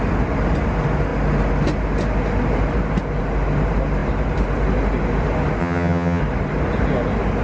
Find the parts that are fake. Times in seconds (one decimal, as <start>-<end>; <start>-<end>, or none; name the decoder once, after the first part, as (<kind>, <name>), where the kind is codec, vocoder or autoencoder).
5.6-6.2 (vocoder, HiFi-GAN)